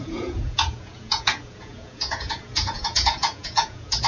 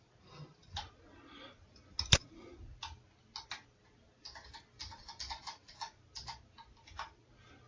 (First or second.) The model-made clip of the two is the first